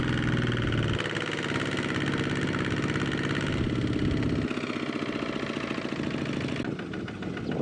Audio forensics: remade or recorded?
recorded